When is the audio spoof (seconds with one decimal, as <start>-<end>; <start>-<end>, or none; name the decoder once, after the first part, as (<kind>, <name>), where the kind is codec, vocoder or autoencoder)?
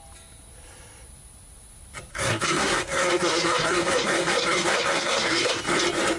2.1-5.6 (codec, SNAC)